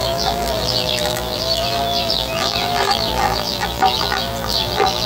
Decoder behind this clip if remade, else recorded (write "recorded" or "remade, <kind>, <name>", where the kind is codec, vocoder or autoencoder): remade, vocoder, BigVGAN v2